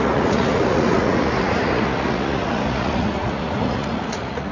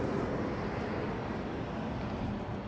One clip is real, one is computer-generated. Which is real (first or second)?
second